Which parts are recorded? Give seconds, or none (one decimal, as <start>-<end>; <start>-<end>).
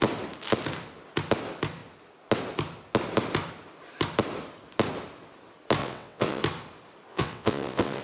0.0-5.8; 6.4-7.1